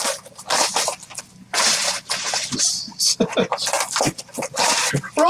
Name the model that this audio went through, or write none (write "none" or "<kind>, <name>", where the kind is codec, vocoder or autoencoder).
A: none